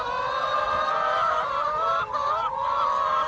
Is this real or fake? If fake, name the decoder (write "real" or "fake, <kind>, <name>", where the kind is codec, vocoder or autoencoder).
real